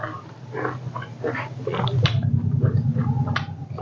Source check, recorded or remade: recorded